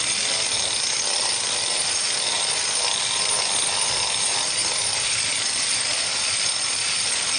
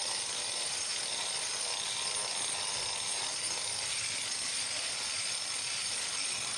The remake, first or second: first